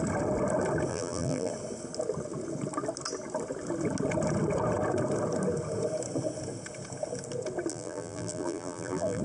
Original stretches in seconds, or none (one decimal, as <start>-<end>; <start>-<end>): 0.0-0.9; 1.5-7.7